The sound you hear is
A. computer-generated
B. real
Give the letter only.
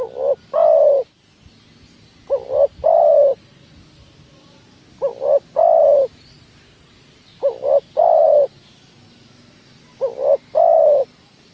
B